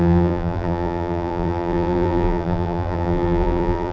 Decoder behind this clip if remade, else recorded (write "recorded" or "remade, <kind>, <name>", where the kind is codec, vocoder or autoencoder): remade, vocoder, BigVGAN v2